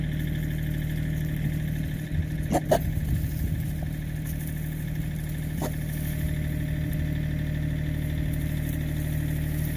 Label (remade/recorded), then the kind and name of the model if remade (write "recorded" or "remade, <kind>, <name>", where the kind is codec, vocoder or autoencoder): recorded